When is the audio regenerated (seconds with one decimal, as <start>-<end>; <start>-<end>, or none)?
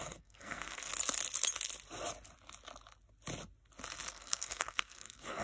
0.0-0.9; 4.1-5.4